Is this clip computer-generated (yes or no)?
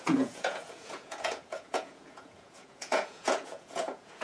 yes